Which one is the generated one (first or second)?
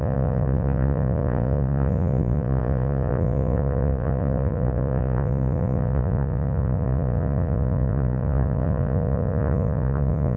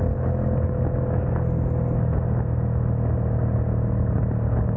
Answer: first